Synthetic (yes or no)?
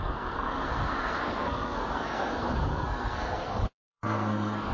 yes